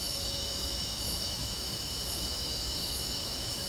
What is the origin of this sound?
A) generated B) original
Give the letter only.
A